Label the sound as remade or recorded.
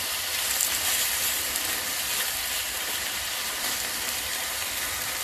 remade